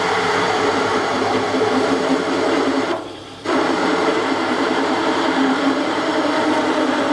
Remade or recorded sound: remade